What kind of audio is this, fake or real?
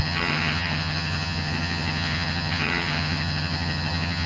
fake